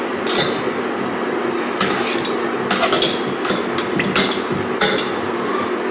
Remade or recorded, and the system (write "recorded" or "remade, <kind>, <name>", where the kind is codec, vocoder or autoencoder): recorded